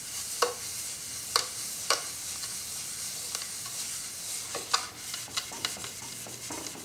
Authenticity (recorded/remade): recorded